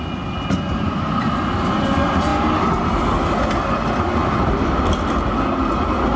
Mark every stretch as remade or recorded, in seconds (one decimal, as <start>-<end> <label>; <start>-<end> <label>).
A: 0.0-6.2 recorded